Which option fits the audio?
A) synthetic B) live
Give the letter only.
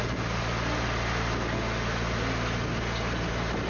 B